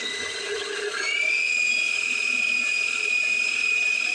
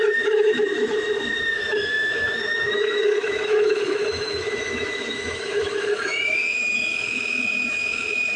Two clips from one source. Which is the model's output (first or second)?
second